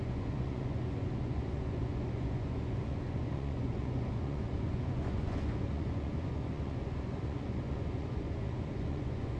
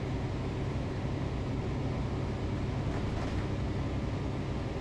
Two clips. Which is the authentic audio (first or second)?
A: second